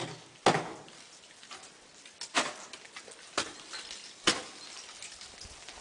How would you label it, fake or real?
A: real